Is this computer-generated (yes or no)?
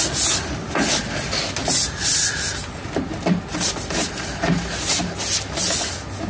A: no